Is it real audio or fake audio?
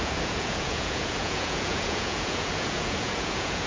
fake